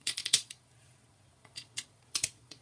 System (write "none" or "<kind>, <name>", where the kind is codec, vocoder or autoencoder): vocoder, Vocos